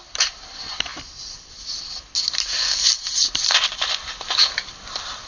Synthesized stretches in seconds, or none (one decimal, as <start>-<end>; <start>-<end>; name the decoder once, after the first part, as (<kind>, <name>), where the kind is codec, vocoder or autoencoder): none